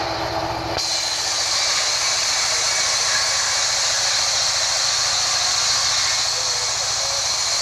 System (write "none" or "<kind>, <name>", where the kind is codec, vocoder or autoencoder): none